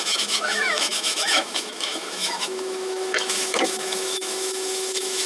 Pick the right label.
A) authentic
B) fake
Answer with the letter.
B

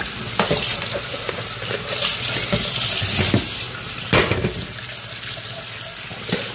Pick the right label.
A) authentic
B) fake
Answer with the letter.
A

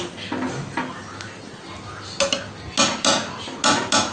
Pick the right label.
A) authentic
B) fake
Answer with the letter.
A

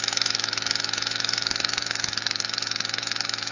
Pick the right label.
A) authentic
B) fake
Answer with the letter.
B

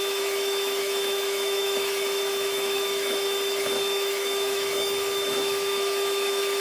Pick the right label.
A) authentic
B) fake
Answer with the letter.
B